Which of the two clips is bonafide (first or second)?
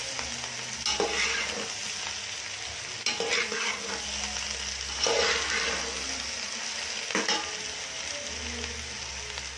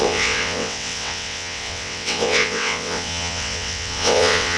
first